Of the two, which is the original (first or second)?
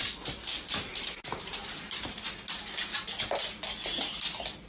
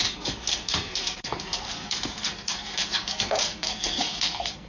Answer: first